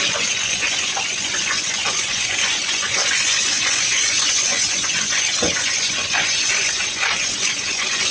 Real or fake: fake